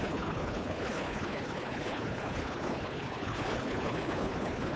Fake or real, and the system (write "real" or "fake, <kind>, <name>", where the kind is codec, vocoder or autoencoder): fake, codec, HILCodec